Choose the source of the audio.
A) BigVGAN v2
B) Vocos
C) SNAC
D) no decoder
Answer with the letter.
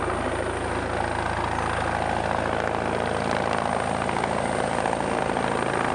D